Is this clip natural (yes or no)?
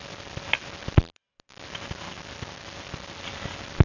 yes